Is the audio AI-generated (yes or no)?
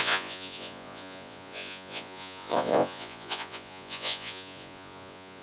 yes